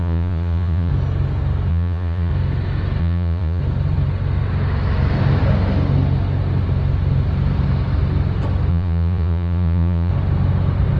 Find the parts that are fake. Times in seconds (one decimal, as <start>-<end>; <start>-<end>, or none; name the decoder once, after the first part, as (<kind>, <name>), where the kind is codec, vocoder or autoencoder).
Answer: 0.0-0.9 (vocoder, Vocos); 1.7-2.3; 3.0-3.6; 8.7-10.1

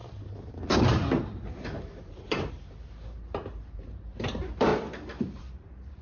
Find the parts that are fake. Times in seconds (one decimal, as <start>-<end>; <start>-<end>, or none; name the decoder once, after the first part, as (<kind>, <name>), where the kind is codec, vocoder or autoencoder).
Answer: 0.0-4.7 (vocoder, BigVGAN v2); 5.2-6.0

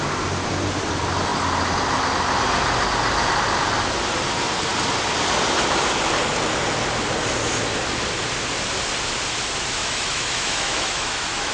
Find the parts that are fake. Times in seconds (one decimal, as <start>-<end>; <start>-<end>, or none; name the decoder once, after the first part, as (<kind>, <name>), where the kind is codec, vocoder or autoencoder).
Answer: 9.8-11.5 (autoencoder, DAC-VAE)

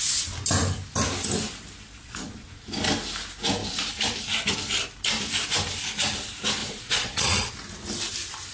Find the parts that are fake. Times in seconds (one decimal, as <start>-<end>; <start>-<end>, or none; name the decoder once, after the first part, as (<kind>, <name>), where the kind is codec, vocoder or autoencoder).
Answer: 2.0-2.6 (vocoder, Vocos); 6.6-7.5

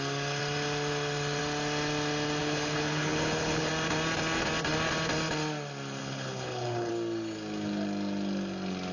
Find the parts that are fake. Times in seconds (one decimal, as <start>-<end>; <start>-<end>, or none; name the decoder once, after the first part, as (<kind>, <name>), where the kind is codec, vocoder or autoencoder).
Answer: 2.4-3.7 (codec, HILCodec); 6.0-6.9

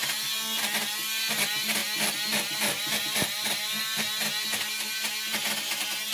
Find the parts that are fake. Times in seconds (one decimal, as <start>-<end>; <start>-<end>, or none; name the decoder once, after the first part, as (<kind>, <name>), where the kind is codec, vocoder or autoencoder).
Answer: none